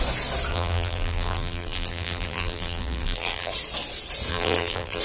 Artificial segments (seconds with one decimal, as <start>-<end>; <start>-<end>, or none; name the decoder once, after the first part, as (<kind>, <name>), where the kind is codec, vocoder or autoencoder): 0.5-3.5 (vocoder, BigVGAN v2); 4.3-5.0